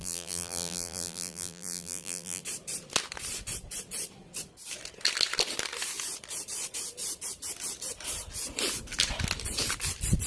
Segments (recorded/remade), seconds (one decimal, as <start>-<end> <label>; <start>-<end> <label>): 0.0-2.4 remade; 2.4-10.3 recorded